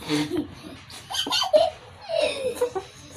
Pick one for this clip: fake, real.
real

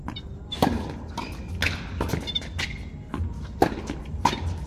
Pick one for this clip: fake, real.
real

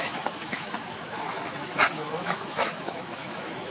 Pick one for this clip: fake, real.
fake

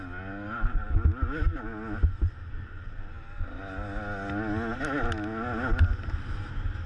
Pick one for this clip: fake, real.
real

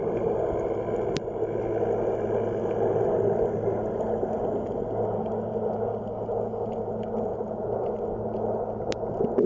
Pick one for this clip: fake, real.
real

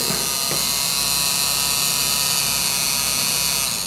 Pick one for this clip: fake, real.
real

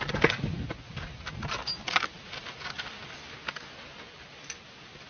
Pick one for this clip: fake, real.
real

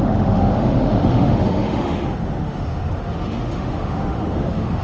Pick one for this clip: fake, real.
fake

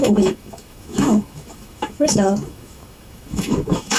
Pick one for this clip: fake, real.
fake